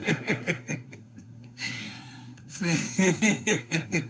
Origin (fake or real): fake